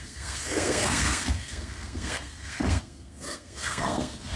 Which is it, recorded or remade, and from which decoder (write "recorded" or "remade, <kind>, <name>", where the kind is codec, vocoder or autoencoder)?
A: remade, codec, SNAC